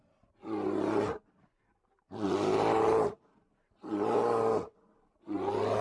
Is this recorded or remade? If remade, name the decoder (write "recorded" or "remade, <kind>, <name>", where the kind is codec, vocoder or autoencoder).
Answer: recorded